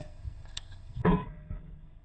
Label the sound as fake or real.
fake